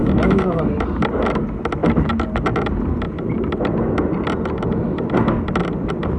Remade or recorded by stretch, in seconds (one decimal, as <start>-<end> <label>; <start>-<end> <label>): 0.0-0.6 remade; 0.6-6.2 recorded